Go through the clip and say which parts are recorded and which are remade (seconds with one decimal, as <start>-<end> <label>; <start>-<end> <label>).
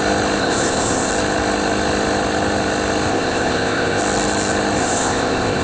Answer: 0.0-0.4 recorded; 0.4-1.1 remade; 1.1-3.1 recorded; 3.1-4.0 remade; 4.0-4.8 recorded; 4.8-5.6 remade